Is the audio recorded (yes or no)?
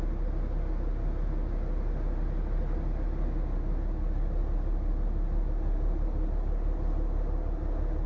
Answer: yes